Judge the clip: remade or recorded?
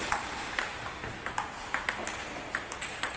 recorded